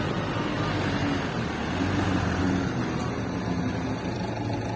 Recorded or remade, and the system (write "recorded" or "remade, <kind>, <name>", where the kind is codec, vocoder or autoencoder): recorded